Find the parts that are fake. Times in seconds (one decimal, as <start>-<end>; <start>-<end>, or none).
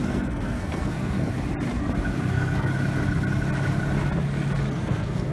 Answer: 0.0-1.3; 2.3-2.7; 4.7-5.3